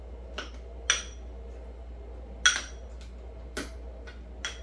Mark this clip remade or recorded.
recorded